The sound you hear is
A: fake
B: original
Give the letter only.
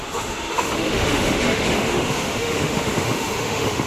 A